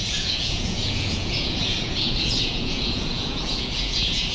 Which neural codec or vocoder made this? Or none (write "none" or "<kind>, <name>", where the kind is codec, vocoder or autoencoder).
vocoder, Vocos